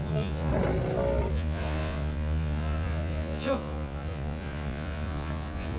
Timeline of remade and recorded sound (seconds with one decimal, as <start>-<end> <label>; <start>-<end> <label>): 0.0-0.5 remade; 0.5-1.3 recorded; 1.3-5.8 remade